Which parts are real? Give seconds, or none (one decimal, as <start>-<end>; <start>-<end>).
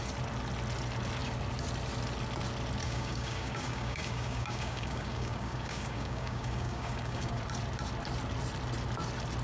0.0-2.8; 7.4-9.4